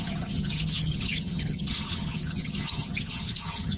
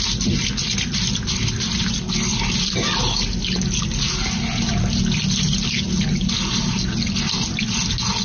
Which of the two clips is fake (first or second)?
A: first